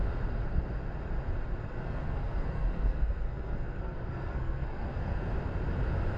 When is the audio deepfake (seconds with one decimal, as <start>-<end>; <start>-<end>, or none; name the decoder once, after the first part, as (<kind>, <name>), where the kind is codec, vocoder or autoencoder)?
1.6-5.3 (codec, SNAC)